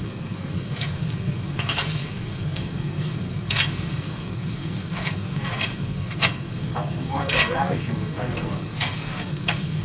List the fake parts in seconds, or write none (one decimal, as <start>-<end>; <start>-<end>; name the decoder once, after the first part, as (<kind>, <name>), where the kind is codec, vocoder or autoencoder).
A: 0.0-9.8 (codec, SNAC)